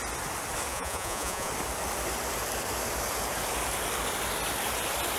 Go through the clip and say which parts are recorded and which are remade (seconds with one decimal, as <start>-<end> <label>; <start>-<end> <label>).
0.0-0.7 recorded; 0.7-1.5 remade; 1.5-5.2 recorded